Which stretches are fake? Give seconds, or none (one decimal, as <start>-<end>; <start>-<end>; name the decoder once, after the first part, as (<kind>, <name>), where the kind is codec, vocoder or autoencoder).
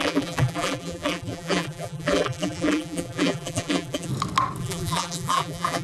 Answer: 0.0-4.1 (vocoder, BigVGAN v2); 4.6-5.8